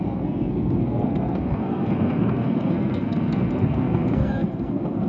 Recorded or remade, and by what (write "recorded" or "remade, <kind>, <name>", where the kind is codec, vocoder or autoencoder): remade, codec, SNAC